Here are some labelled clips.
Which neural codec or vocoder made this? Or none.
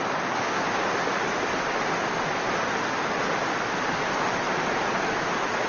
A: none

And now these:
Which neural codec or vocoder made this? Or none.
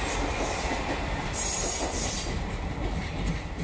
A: none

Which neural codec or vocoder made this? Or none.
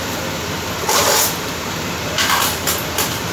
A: vocoder, BigVGAN v2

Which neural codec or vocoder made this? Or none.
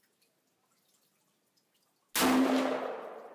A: none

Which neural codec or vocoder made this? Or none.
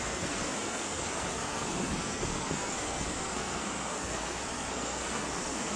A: codec, SNAC